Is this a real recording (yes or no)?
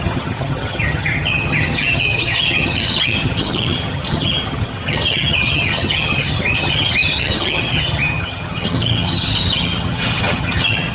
no